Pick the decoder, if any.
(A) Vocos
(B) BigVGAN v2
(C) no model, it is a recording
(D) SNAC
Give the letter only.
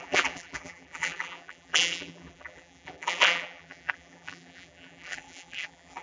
B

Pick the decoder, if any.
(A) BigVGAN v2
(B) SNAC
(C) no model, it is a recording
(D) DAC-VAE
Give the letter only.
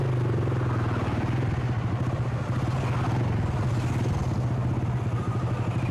C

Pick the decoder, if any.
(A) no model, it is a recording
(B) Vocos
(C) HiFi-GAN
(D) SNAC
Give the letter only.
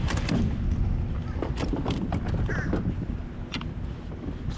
A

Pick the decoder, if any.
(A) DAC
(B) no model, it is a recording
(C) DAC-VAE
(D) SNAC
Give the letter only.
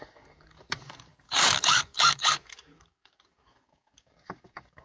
A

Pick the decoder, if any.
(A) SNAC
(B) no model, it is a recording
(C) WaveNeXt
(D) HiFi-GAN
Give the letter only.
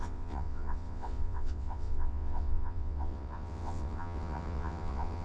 C